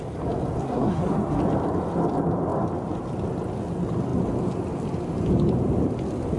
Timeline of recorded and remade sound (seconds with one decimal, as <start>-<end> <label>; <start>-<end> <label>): 0.0-0.6 recorded; 0.6-1.4 remade; 1.4-6.4 recorded